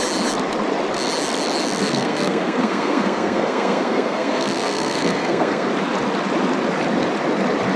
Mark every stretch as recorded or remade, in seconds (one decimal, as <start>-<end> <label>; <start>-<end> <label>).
0.0-1.8 recorded; 1.8-5.7 remade; 5.7-7.8 recorded